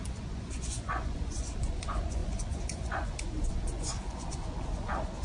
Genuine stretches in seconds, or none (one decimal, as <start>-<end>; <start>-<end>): none

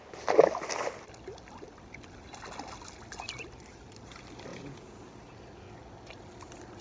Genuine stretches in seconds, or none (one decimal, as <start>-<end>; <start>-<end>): 0.0-4.5; 5.0-6.8

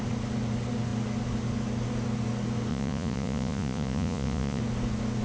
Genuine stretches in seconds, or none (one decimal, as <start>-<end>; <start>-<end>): 0.0-2.7; 4.6-5.2

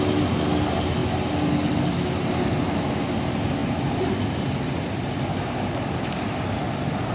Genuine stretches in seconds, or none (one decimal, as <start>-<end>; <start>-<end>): 0.0-7.1

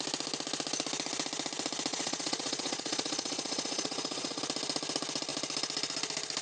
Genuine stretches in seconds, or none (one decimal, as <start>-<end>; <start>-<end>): 0.0-1.9; 4.4-6.4